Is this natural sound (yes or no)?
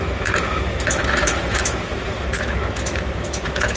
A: no